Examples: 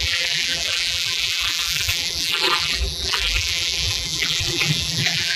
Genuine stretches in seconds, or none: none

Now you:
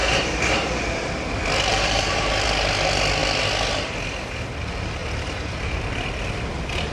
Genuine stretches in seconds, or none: 1.1-1.7; 2.3-5.0; 5.8-6.9

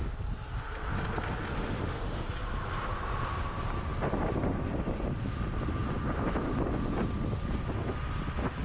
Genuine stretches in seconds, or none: 0.0-1.5; 2.2-8.6